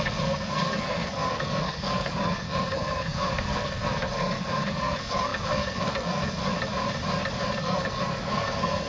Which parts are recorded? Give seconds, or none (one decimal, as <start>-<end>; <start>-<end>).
6.4-7.6